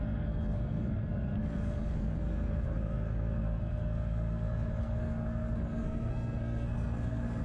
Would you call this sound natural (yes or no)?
no